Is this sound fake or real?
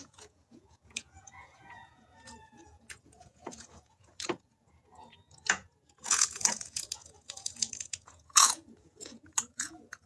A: fake